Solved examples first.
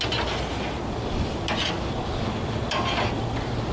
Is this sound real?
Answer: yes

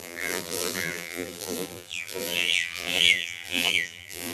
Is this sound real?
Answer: no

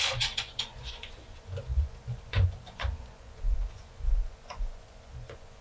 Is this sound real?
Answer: no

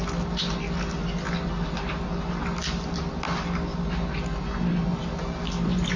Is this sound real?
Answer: yes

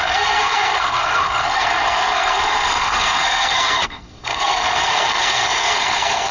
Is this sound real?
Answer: no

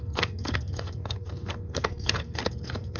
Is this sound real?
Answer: no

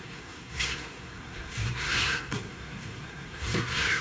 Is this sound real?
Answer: no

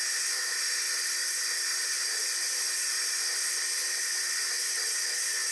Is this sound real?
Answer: yes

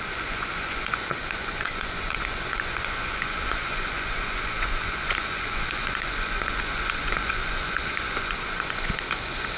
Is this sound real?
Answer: no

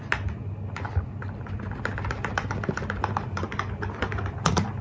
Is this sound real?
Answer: yes